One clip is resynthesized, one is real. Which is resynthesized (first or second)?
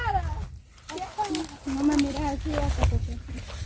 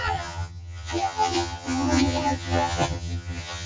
second